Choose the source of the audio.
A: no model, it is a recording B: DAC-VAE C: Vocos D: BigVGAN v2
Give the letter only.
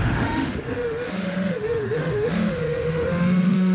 B